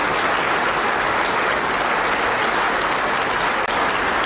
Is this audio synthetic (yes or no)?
no